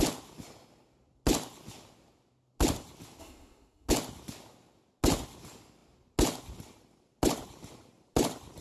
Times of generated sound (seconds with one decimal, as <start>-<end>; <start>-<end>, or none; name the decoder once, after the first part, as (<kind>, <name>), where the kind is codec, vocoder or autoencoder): 3.2-3.9 (codec, SNAC)